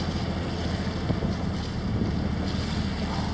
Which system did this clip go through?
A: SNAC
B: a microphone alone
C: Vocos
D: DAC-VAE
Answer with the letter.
B